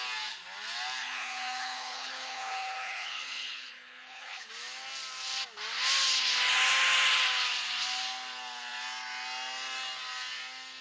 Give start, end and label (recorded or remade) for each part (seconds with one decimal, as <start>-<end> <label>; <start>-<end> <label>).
0.0-1.0 recorded; 1.0-4.5 remade; 4.5-10.8 recorded

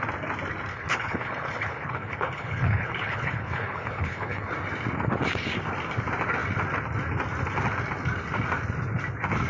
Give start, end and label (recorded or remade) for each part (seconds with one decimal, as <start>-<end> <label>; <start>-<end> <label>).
0.0-0.7 recorded; 0.7-4.5 remade; 4.5-9.5 recorded